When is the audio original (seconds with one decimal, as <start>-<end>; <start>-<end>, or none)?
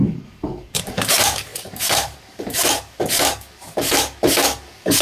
none